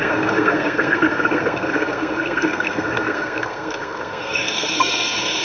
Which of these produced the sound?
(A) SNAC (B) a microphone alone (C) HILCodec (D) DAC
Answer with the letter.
A